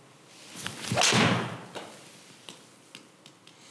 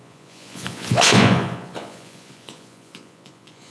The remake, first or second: second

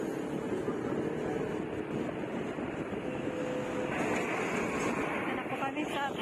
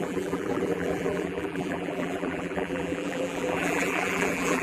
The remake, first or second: second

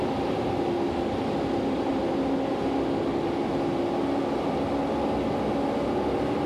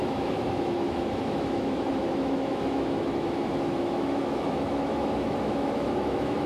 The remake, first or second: second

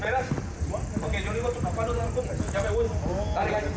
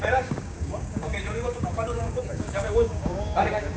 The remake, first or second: second